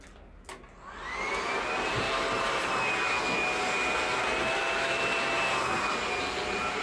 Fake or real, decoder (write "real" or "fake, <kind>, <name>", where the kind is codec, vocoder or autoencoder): real